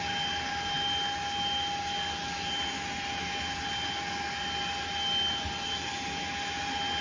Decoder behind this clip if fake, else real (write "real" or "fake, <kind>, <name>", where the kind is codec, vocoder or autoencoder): real